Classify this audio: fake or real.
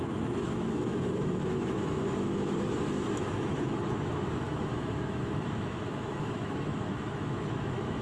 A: fake